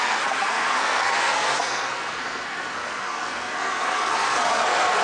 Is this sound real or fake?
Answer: fake